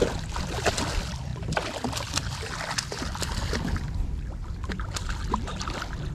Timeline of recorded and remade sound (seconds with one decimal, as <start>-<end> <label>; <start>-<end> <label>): 0.0-6.1 recorded